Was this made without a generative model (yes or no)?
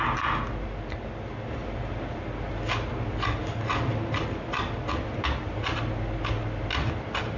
yes